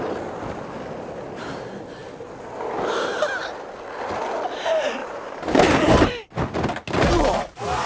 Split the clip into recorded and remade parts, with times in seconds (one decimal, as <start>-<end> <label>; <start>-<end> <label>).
0.0-5.0 recorded; 5.0-6.1 remade; 6.1-7.9 recorded